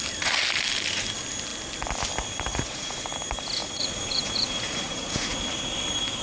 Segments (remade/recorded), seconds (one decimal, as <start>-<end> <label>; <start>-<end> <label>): 0.0-2.5 recorded; 2.5-3.1 remade; 3.1-3.6 recorded; 3.6-5.4 remade; 5.4-6.2 recorded